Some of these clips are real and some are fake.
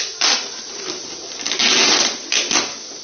real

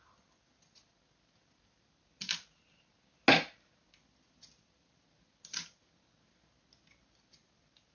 real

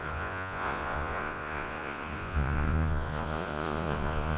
fake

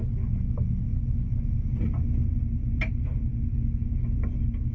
real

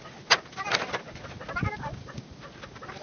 real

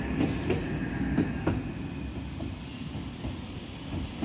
real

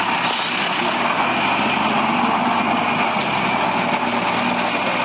real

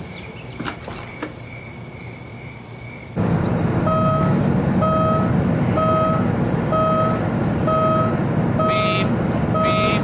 real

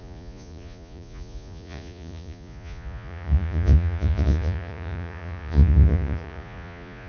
fake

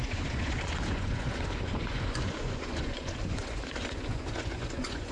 fake